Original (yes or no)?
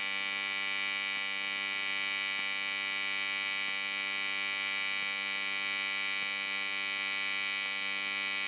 yes